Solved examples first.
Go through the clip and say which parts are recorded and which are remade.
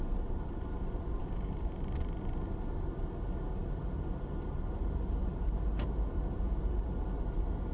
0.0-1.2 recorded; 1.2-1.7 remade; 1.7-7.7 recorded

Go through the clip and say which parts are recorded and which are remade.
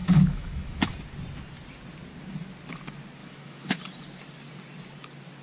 0.0-0.9 remade; 0.9-3.2 recorded; 3.2-3.8 remade; 3.8-5.4 recorded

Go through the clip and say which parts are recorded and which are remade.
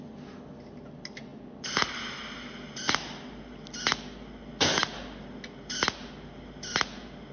0.0-7.3 recorded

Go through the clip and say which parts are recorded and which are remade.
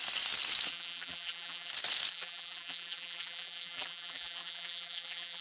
0.0-0.7 recorded; 0.7-1.7 remade; 1.7-2.1 recorded; 2.1-5.4 remade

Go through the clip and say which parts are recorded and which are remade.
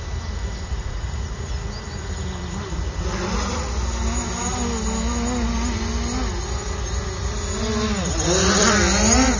0.0-0.7 recorded; 0.7-1.5 remade; 1.5-9.4 recorded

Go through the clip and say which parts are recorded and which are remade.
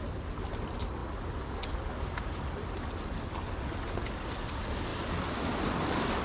0.0-6.2 recorded